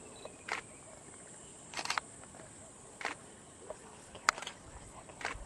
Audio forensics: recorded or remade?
recorded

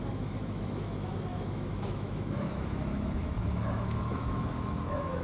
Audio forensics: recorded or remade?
remade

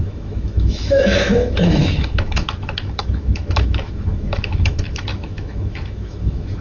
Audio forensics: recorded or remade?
remade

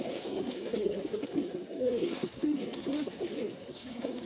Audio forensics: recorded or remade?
remade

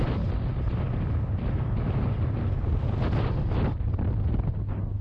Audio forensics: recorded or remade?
recorded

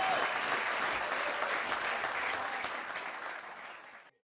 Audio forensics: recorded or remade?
recorded